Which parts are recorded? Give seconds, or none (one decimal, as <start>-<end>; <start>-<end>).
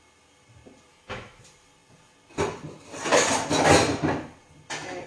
0.0-0.9; 1.4-5.1